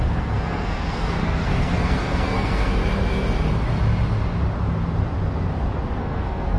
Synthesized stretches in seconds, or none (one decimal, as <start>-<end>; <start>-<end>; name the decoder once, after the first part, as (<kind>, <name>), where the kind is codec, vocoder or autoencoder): 0.0-2.8 (codec, SNAC); 6.0-6.6